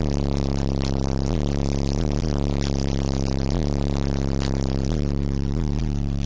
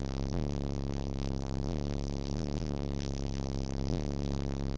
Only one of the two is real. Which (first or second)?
first